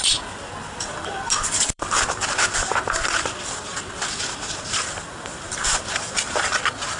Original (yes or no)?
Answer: no